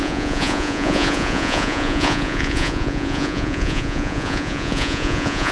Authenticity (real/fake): fake